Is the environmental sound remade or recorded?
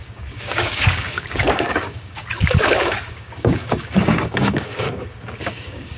remade